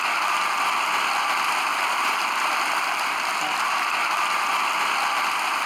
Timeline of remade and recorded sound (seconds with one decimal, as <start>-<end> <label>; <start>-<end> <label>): 0.0-1.7 recorded; 1.7-4.5 remade; 4.5-5.7 recorded